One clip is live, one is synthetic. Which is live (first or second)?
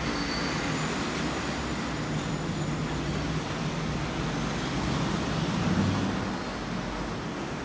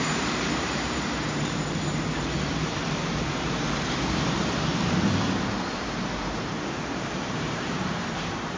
first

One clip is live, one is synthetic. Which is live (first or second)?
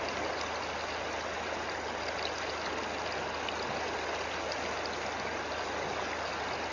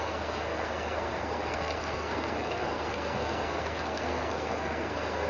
first